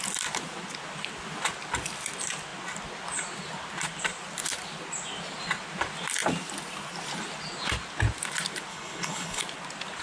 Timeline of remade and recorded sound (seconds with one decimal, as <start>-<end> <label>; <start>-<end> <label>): 0.0-8.7 recorded; 8.7-9.4 remade; 9.4-10.0 recorded